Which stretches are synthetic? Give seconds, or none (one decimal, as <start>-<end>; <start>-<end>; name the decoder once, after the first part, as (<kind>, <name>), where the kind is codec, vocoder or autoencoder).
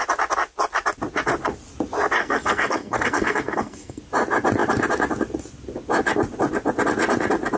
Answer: 2.2-4.0 (codec, SNAC)